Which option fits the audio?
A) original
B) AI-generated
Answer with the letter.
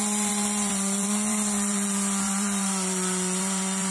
B